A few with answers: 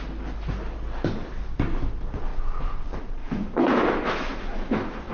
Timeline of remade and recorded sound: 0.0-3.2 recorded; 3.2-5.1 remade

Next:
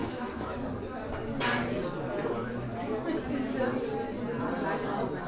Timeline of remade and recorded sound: 0.0-0.6 remade; 0.6-5.3 recorded

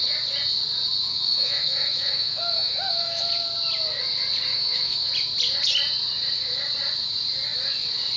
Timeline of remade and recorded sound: 0.0-1.1 recorded; 1.1-3.2 remade; 3.2-4.5 recorded; 4.5-5.1 remade; 5.1-8.2 recorded

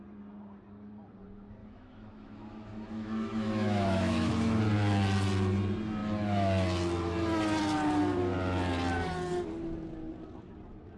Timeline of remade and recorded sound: 0.0-1.6 recorded; 1.6-4.6 remade; 4.6-11.0 recorded

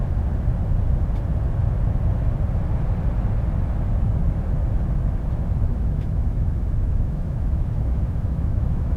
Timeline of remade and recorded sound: 0.0-5.7 recorded; 5.7-9.0 remade

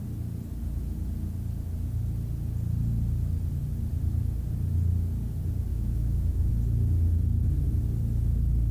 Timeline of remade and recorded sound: 0.0-5.7 recorded; 5.7-6.5 remade; 6.5-8.7 recorded

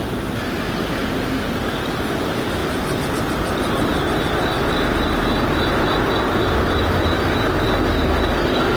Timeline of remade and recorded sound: 0.0-8.8 recorded